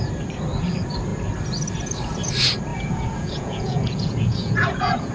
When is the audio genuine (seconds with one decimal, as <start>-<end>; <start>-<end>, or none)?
0.0-2.7